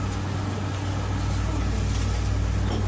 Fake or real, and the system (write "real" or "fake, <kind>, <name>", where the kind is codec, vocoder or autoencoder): real